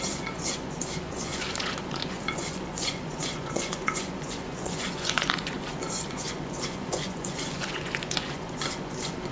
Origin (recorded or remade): remade